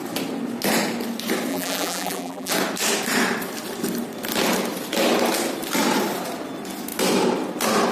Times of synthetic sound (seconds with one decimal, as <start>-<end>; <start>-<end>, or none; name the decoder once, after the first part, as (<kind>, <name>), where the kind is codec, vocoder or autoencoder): 1.5-2.5 (vocoder, BigVGAN v2)